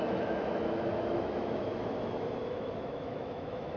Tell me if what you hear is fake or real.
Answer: fake